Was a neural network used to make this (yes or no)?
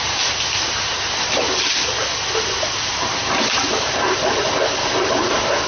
no